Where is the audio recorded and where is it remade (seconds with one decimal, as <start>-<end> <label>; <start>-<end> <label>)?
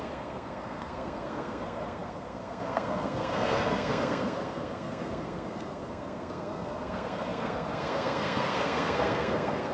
0.0-9.7 remade